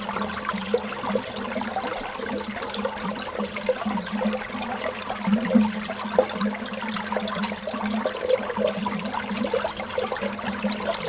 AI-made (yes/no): no